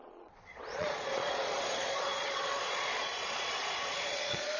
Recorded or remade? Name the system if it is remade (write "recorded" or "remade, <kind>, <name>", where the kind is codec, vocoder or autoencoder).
remade, vocoder, Vocos